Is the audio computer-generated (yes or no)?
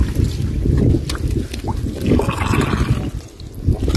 no